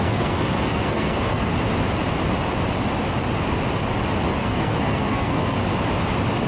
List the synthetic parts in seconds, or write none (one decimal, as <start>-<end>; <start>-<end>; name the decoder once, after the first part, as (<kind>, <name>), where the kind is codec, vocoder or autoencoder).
0.0-1.5 (codec, SNAC); 4.4-5.6